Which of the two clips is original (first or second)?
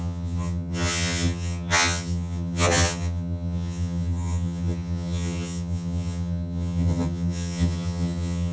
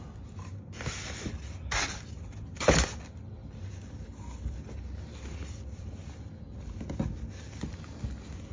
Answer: second